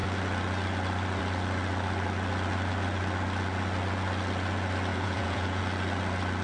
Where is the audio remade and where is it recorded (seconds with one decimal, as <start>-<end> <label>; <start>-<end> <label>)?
0.0-4.9 recorded; 4.9-5.6 remade; 5.6-6.4 recorded